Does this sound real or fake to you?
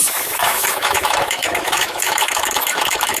fake